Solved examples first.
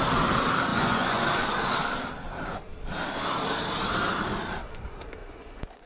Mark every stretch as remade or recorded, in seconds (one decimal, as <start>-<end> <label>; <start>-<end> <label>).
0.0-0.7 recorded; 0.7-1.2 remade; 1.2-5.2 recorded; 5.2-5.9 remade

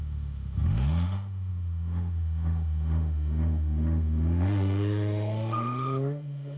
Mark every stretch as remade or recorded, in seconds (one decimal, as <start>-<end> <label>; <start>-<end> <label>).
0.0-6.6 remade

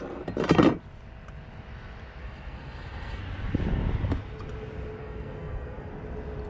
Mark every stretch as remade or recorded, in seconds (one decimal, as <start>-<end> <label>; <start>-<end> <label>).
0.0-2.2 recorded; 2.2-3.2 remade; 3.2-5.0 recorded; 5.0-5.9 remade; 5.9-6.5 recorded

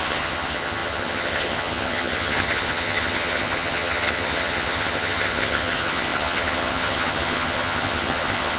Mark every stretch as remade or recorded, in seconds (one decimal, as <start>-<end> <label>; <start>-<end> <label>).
0.0-8.6 remade

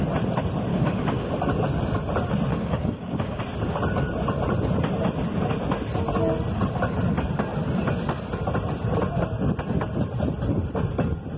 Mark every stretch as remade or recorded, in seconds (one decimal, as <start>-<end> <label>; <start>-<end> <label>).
0.0-0.7 recorded; 0.7-1.3 remade; 1.3-2.5 recorded; 2.5-3.4 remade; 3.4-11.4 recorded

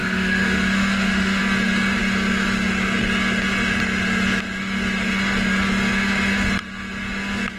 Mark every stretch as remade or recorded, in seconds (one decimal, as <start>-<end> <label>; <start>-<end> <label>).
0.0-1.4 remade; 1.4-7.6 recorded

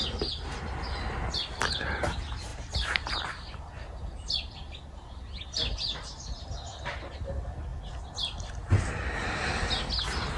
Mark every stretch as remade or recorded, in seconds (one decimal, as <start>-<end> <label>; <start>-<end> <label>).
0.0-2.5 recorded; 2.5-4.0 remade; 4.0-10.4 recorded

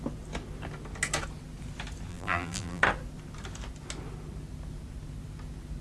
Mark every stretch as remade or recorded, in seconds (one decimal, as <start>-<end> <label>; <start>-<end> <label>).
0.0-2.1 recorded; 2.1-2.8 remade; 2.8-5.8 recorded